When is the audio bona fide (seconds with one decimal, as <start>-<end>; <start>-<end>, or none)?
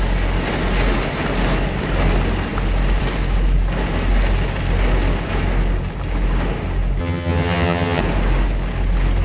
0.0-7.0; 8.0-9.2